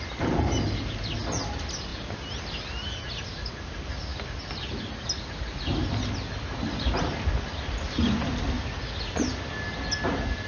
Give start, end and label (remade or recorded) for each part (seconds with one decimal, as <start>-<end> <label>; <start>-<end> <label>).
0.0-10.5 recorded

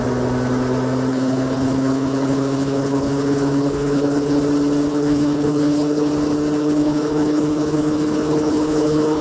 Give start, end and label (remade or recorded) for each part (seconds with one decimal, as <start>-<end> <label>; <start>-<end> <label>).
0.0-1.1 recorded; 1.1-4.4 remade; 4.4-4.9 recorded; 4.9-6.1 remade; 6.1-6.6 recorded; 6.6-9.2 remade

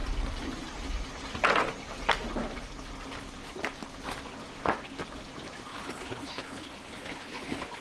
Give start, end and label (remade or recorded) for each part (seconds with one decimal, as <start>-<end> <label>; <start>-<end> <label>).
0.0-5.7 recorded; 5.7-7.8 remade

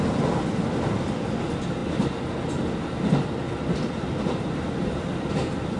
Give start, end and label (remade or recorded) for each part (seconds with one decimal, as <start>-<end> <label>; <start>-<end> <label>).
0.0-5.8 recorded

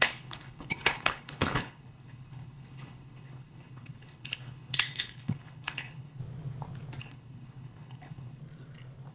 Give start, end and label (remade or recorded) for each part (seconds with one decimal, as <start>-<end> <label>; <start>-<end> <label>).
0.0-6.2 remade; 6.2-7.0 recorded; 7.0-8.4 remade; 8.4-9.1 recorded

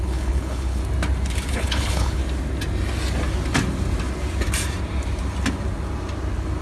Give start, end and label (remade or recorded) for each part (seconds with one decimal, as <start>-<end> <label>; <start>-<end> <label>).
0.0-0.8 remade; 0.8-1.5 recorded; 1.5-2.2 remade; 2.2-6.6 recorded

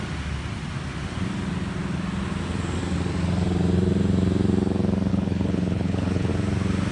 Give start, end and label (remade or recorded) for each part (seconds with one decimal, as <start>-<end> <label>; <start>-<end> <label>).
0.0-5.1 recorded; 5.1-6.3 remade; 6.3-6.9 recorded